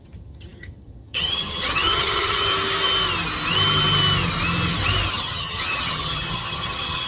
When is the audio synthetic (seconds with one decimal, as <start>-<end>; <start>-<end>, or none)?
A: 0.0-2.5; 5.1-7.1